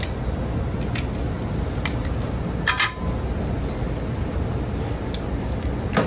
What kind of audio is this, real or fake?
real